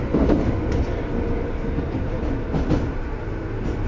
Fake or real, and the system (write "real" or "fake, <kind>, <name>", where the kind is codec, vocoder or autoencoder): real